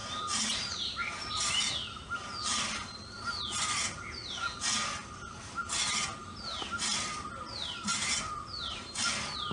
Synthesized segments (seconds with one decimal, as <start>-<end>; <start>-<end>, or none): none